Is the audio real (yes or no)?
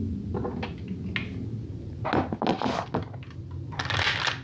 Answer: yes